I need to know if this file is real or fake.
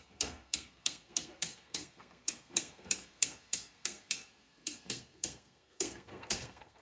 fake